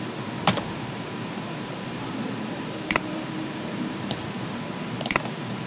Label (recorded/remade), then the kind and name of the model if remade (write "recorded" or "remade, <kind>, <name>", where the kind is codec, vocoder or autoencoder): remade, vocoder, BigVGAN v2